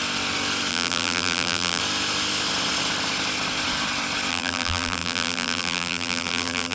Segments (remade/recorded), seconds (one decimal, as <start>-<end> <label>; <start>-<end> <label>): 0.0-0.7 recorded; 0.7-1.8 remade; 1.8-4.3 recorded; 4.3-6.7 remade